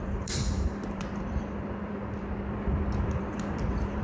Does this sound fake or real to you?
fake